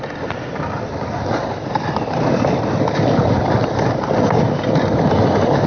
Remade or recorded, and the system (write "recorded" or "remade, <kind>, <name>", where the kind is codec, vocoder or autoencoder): remade, vocoder, BigVGAN v2